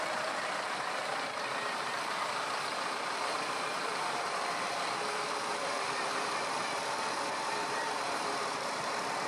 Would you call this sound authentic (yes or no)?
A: no